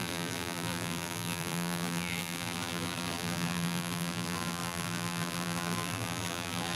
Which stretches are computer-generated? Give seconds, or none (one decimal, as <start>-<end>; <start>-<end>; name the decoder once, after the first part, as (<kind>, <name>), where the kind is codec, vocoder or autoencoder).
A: 0.0-6.8 (vocoder, BigVGAN v2)